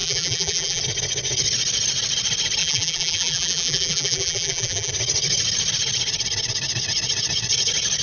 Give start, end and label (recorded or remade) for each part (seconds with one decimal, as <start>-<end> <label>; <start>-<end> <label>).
0.0-0.8 remade; 0.8-2.6 recorded; 2.6-4.9 remade; 4.9-8.0 recorded